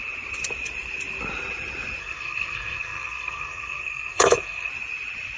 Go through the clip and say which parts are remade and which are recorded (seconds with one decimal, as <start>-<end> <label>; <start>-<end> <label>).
0.0-2.0 recorded; 2.0-4.7 remade; 4.7-5.4 recorded